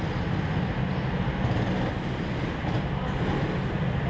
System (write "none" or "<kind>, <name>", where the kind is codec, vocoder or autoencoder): none